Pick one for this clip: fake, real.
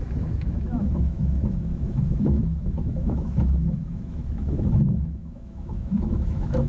fake